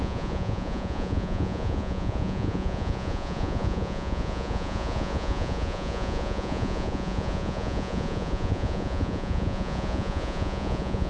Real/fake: fake